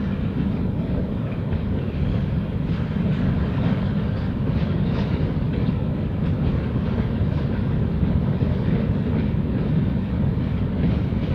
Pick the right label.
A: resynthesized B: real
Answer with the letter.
A